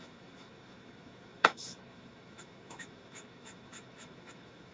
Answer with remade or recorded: remade